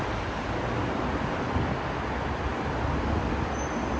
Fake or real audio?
real